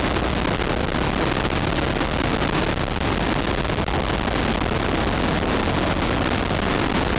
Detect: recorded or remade recorded